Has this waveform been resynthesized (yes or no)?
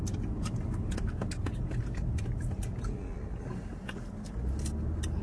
no